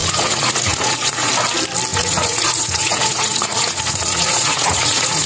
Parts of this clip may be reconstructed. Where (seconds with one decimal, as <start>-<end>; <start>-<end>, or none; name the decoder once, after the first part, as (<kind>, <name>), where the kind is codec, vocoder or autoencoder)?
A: 0.0-1.3 (vocoder, Vocos); 1.9-5.3